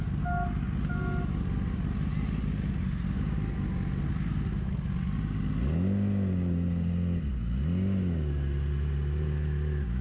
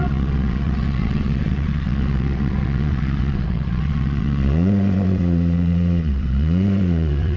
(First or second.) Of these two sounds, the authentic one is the first